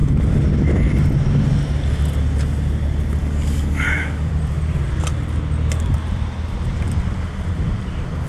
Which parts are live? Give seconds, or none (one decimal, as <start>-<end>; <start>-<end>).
0.0-3.2; 4.3-8.3